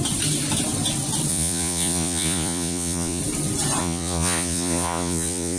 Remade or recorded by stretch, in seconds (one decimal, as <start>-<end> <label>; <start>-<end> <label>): 0.0-1.3 recorded; 1.3-3.2 remade; 3.2-3.8 recorded; 3.8-5.6 remade